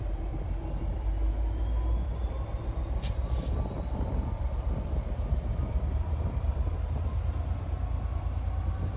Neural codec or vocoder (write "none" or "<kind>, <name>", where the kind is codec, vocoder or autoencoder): vocoder, BigVGAN v2